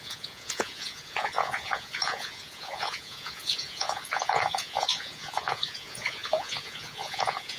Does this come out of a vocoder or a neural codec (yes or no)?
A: yes